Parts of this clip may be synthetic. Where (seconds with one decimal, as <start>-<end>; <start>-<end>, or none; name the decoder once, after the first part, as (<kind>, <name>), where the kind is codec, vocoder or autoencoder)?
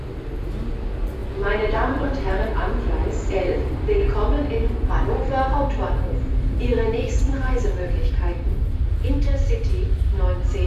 1.2-2.5 (vocoder, BigVGAN v2); 3.0-3.8; 6.7-9.1